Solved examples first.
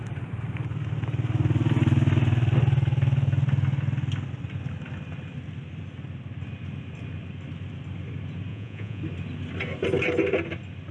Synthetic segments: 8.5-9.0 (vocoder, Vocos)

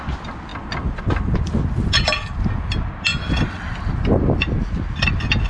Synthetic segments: none

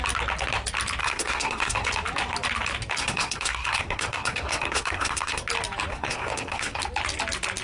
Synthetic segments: 1.0-1.9 (codec, SNAC); 3.0-5.4; 5.9-6.8

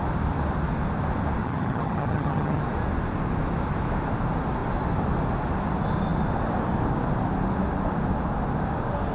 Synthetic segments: 1.4-2.6 (vocoder, HiFi-GAN)

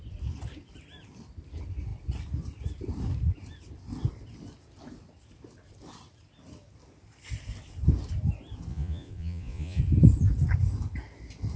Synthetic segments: 8.7-9.8 (vocoder, Vocos)

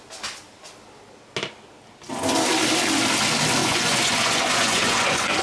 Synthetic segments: 3.6-5.4 (vocoder, Vocos)

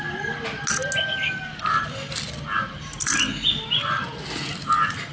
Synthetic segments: none

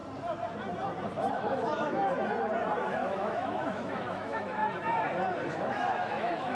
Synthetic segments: 1.3-2.0 (autoencoder, DAC-VAE); 2.8-4.6; 5.5-6.5